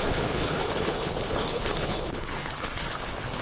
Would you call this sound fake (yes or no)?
yes